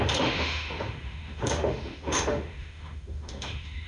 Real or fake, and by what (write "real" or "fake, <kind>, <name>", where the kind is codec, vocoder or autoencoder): fake, autoencoder, DAC-VAE